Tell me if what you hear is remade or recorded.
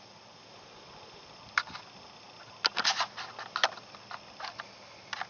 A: recorded